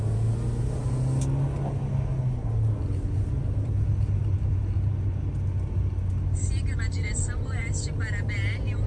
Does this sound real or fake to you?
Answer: real